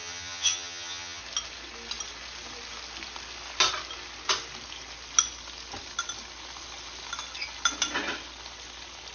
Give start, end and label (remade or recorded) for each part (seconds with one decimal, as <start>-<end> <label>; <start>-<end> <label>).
0.0-1.2 remade; 1.2-9.1 recorded